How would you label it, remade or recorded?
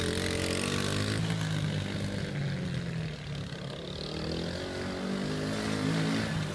recorded